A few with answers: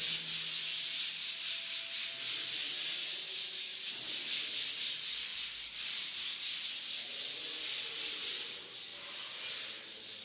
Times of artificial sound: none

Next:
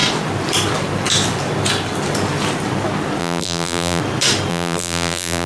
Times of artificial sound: 3.2-4.0 (vocoder, BigVGAN v2); 4.5-5.5

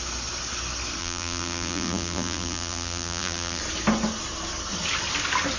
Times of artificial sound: 1.0-3.6 (vocoder, BigVGAN v2)